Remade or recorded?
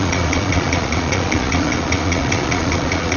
remade